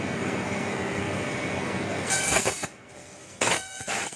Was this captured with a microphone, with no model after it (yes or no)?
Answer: no